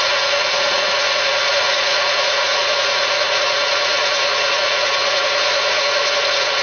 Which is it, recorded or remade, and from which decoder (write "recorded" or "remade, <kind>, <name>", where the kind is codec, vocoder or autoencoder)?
remade, vocoder, Vocos